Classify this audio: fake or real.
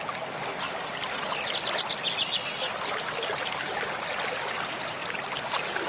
real